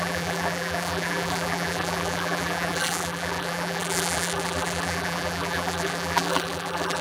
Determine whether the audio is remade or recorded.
remade